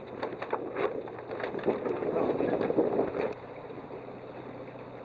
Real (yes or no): yes